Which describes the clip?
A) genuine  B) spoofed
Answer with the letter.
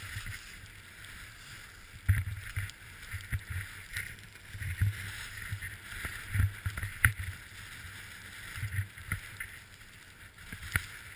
A